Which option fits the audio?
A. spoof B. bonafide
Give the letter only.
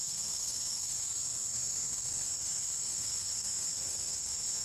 A